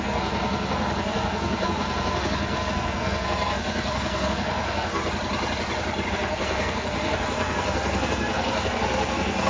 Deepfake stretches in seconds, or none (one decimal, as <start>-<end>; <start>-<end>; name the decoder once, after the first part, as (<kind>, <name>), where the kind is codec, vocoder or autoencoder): 0.0-5.0 (codec, SNAC); 6.1-9.5